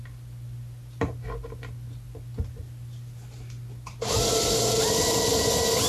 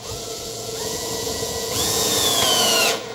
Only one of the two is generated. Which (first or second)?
second